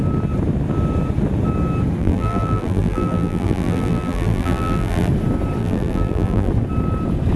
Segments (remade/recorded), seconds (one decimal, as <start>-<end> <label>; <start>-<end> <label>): 0.0-2.0 recorded; 2.0-5.1 remade; 5.1-5.6 recorded; 5.6-6.5 remade; 6.5-7.4 recorded